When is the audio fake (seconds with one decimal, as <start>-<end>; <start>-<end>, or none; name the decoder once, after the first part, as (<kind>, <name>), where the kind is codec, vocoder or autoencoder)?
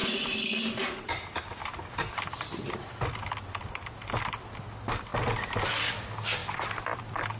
0.0-4.4 (vocoder, BigVGAN v2); 6.4-7.4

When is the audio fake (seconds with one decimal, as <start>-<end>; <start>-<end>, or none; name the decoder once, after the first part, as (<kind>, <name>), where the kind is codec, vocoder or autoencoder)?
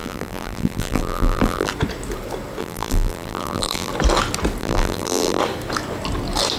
0.0-1.7 (vocoder, BigVGAN v2); 2.6-3.9; 4.6-5.4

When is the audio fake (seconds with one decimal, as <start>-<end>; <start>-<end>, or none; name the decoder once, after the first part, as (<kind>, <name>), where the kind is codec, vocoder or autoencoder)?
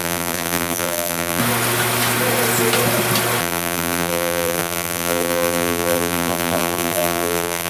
0.0-1.4 (vocoder, BigVGAN v2); 3.4-7.7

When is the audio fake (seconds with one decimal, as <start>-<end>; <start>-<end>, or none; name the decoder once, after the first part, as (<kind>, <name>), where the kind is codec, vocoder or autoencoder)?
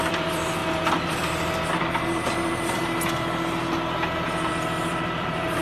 0.0-2.8 (vocoder, BigVGAN v2); 4.5-5.6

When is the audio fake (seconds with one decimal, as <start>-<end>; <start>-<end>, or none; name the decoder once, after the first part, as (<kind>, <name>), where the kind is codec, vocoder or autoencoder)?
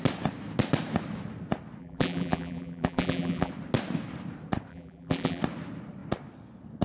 1.8-3.5 (vocoder, BigVGAN v2); 4.7-5.4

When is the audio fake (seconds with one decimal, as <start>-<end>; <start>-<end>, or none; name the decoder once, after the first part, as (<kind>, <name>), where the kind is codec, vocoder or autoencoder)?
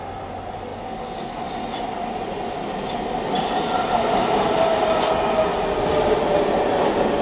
none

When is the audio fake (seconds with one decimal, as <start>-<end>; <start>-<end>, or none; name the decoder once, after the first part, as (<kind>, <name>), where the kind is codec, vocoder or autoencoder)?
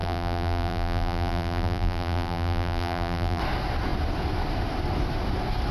0.0-3.4 (vocoder, BigVGAN v2)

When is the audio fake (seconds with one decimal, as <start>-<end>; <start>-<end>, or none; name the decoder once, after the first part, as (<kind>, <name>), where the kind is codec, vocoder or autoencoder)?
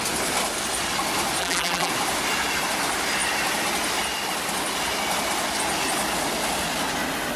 1.4-1.9 (vocoder, BigVGAN v2)